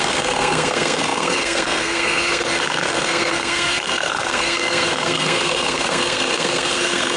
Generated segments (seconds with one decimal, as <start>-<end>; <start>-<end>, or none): 0.0-7.2